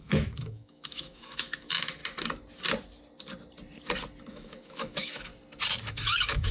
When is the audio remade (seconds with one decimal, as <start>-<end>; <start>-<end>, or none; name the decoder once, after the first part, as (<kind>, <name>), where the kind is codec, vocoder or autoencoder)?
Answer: 0.0-2.0 (autoencoder, DAC-VAE); 4.3-5.3; 5.9-6.5